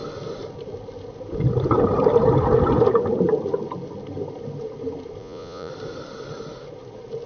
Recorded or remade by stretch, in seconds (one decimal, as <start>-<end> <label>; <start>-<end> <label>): 0.0-5.2 recorded; 5.2-5.7 remade; 5.7-7.3 recorded